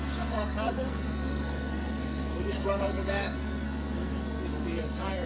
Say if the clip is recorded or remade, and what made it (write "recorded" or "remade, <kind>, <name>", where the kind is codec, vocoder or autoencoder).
remade, codec, SNAC